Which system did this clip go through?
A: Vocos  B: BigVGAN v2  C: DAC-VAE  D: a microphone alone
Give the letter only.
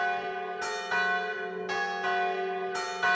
D